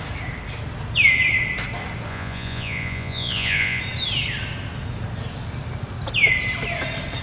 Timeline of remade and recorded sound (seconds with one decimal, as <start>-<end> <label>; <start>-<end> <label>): 0.0-2.1 recorded; 2.1-3.8 remade; 3.8-7.2 recorded